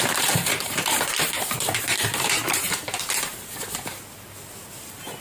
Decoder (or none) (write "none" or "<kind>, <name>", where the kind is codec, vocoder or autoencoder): vocoder, BigVGAN v2